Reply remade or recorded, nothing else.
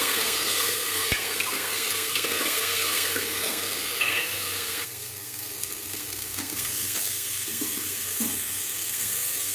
remade